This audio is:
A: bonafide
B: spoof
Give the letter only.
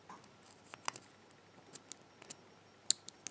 A